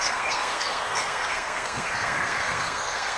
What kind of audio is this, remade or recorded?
remade